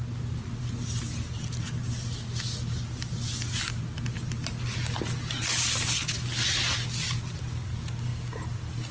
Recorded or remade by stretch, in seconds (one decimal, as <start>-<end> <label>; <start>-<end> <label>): 0.0-8.9 recorded